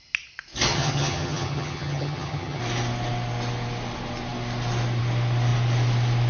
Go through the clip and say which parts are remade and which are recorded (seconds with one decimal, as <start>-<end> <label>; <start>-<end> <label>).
0.0-0.7 recorded; 0.7-2.6 remade; 2.6-6.3 recorded